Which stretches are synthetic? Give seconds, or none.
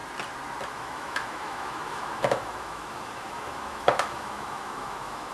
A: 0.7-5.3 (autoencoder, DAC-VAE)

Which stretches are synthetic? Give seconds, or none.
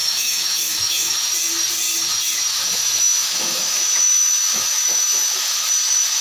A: 0.0-1.3 (autoencoder, DAC-VAE); 2.5-6.2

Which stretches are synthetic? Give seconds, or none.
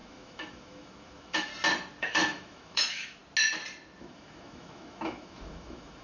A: 0.0-1.5 (autoencoder, DAC-VAE); 2.0-3.2; 4.0-6.0